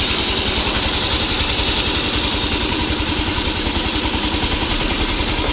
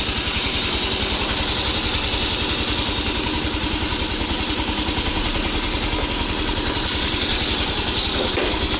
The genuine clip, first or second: second